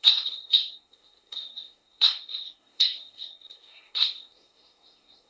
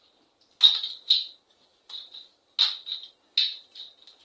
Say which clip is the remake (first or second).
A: first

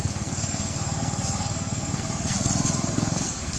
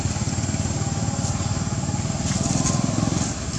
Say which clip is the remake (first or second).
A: first